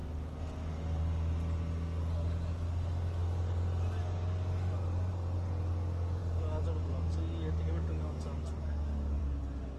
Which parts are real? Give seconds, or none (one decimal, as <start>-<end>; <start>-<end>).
0.0-9.8